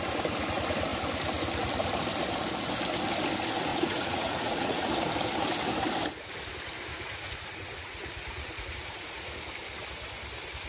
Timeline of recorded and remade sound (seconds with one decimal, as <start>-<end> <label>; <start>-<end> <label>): 0.0-3.7 recorded; 3.7-4.9 remade; 4.9-6.9 recorded; 6.9-9.3 remade; 9.3-10.7 recorded